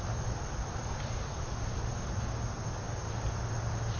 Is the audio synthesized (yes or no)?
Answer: no